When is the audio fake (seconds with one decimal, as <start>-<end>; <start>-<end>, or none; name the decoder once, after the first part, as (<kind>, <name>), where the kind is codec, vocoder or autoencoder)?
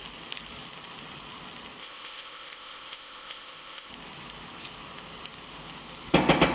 1.8-3.9 (codec, ZipCodec)